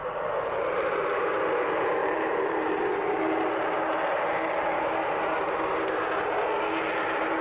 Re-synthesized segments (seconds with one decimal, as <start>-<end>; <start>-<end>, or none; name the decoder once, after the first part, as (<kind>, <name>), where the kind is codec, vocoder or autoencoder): 2.0-2.7 (vocoder, BigVGAN v2)